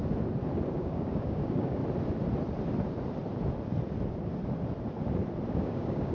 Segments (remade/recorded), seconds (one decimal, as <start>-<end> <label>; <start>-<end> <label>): 0.0-0.7 recorded; 0.7-1.8 remade; 1.8-5.5 recorded; 5.5-6.1 remade